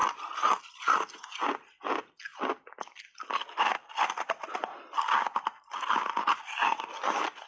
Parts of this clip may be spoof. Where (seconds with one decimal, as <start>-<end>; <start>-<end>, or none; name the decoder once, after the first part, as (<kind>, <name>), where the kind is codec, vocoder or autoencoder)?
0.0-0.6 (vocoder, BigVGAN v2)